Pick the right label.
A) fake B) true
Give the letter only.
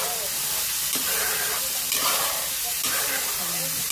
B